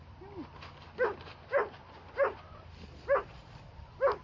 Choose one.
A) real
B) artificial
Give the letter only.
A